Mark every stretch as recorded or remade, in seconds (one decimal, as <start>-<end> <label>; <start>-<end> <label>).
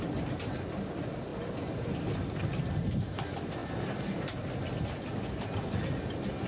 0.0-6.5 recorded